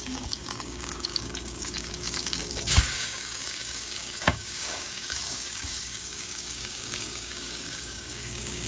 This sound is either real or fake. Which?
fake